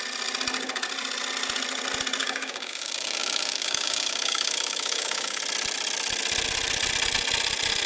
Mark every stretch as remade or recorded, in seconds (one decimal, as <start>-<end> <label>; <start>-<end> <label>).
0.0-2.2 recorded; 2.2-5.4 remade; 5.4-7.9 recorded